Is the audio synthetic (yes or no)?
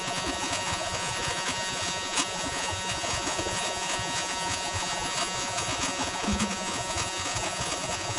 yes